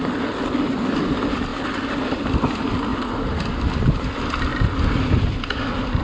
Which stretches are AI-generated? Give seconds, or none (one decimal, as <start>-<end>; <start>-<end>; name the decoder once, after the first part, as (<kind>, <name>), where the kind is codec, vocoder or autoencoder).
1.5-2.1 (vocoder, BigVGAN v2); 4.5-5.3